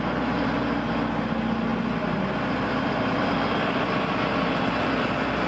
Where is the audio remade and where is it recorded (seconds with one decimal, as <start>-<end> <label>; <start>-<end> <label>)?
0.0-5.5 recorded